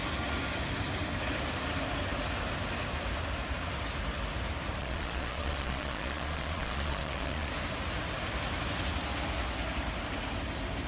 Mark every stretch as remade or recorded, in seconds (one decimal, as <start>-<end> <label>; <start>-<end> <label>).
0.0-4.8 recorded; 4.8-7.5 remade; 7.5-10.9 recorded